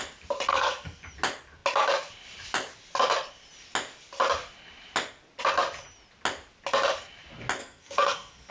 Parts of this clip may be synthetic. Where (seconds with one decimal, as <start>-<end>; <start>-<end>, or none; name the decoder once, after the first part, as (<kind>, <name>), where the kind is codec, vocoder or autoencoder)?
0.5-1.0 (codec, SNAC); 7.6-8.5